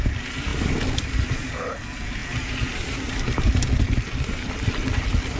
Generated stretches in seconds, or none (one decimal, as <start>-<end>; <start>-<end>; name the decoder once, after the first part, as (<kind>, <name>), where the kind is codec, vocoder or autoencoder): none